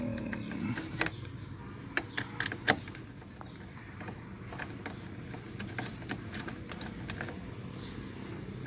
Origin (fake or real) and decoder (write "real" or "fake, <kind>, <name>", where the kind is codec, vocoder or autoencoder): real